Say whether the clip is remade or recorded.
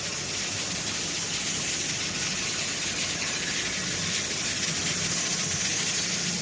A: recorded